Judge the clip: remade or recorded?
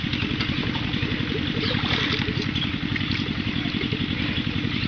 recorded